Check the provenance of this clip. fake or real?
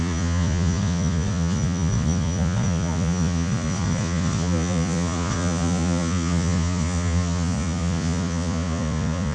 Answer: fake